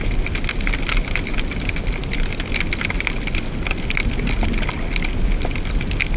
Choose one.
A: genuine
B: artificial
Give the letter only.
A